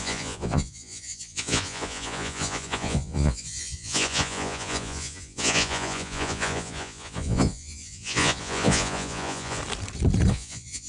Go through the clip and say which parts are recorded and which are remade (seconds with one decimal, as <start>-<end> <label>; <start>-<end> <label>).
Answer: 0.0-9.6 remade; 9.6-10.3 recorded; 10.3-10.9 remade